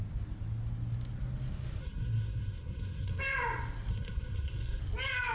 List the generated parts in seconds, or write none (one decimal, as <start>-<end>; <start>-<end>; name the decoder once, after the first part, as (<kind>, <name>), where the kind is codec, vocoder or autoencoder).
1.8-3.2 (codec, SNAC); 3.9-4.8